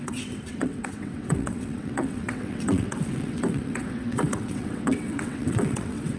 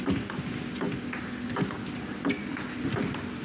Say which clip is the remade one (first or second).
first